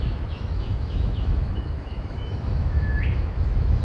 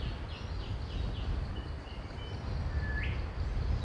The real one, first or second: second